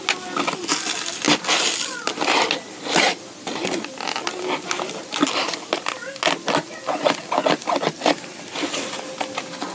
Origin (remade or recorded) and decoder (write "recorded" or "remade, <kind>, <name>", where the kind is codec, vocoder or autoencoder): recorded